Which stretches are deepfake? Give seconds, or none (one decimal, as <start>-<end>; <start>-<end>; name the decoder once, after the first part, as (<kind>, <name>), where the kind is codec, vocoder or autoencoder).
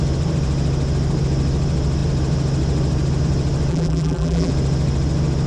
3.7-4.5 (vocoder, BigVGAN v2)